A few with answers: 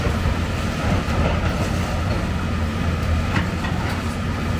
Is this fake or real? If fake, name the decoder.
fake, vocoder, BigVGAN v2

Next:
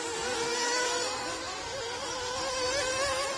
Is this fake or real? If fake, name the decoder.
real